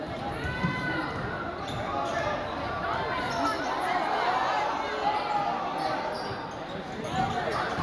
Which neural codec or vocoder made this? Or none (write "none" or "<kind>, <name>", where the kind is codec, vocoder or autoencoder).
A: none